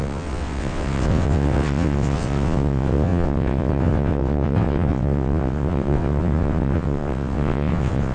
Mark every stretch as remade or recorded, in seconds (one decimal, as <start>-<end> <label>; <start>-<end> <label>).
0.0-8.1 remade